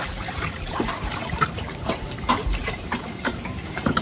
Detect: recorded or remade remade